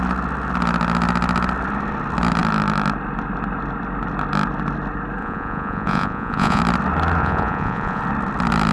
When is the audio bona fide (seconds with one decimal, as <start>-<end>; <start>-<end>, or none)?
0.0-5.2; 6.6-7.2; 8.0-8.7